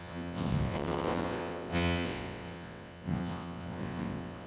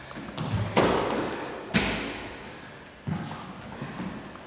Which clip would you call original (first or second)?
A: second